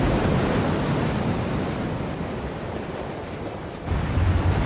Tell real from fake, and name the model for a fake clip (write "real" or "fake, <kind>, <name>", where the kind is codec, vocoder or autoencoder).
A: fake, vocoder, BigVGAN v2